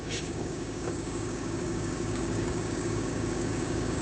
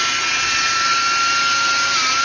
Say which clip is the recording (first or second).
second